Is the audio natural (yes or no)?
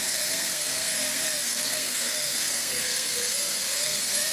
no